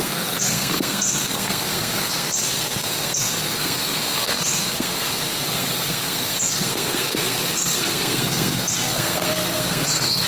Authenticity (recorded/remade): remade